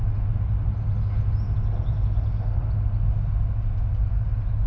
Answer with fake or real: real